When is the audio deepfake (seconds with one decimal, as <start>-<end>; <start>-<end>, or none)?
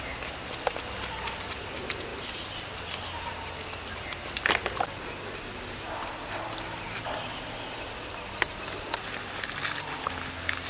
none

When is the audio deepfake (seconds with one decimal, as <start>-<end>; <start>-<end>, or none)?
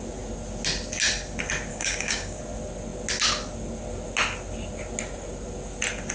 1.7-2.4